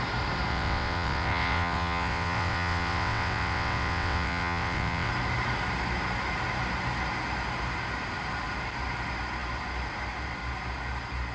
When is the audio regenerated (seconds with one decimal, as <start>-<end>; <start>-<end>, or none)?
0.5-5.1